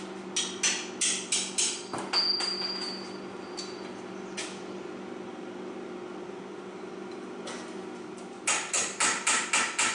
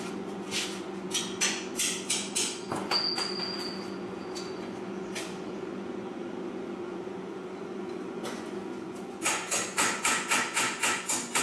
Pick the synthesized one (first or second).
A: second